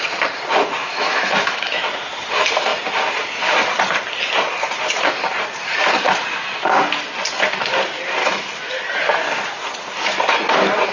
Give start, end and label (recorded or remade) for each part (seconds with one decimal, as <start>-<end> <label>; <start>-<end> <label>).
0.0-0.8 recorded; 0.8-1.8 remade; 1.8-8.2 recorded; 8.2-8.8 remade; 8.8-10.9 recorded